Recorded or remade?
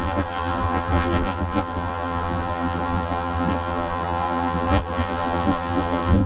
remade